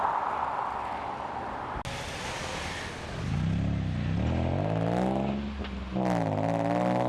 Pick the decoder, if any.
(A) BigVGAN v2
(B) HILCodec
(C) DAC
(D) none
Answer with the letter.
D